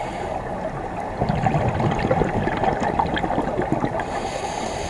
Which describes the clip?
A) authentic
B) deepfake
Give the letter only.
A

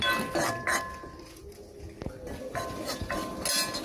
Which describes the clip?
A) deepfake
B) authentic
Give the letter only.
B